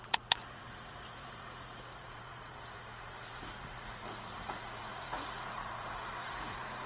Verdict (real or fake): fake